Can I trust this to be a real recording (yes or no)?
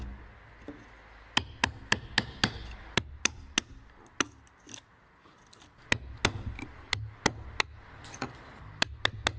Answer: yes